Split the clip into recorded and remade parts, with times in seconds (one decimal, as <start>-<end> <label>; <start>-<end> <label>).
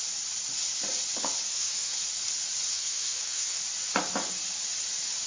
0.0-1.5 recorded; 1.5-2.0 remade; 2.0-2.7 recorded; 2.7-3.6 remade; 3.6-5.3 recorded